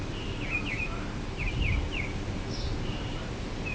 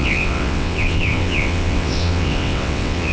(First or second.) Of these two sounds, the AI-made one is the second